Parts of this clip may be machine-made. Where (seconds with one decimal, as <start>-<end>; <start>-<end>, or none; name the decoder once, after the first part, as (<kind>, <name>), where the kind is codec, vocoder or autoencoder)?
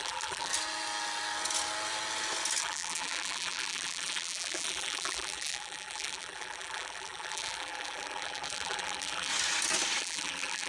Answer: 0.0-0.5 (vocoder, BigVGAN v2); 2.6-9.3; 10.0-10.7